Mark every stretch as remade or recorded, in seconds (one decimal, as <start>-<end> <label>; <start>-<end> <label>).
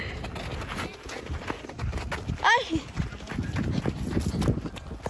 0.0-5.1 recorded